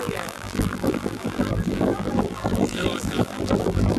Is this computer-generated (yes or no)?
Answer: yes